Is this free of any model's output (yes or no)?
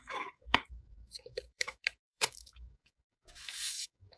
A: no